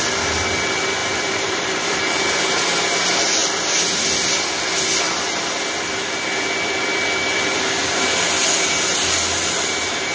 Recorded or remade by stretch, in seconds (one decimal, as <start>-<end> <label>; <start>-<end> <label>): 0.0-1.0 recorded; 1.0-2.0 remade; 2.0-10.1 recorded